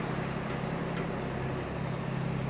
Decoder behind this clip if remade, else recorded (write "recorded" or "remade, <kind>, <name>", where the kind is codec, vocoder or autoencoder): recorded